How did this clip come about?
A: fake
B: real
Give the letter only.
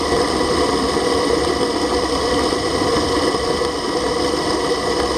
B